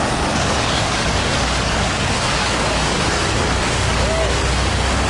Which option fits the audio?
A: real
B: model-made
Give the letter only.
B